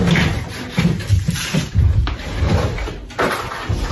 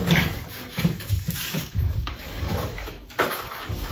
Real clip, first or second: first